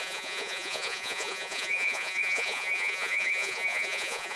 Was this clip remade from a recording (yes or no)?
yes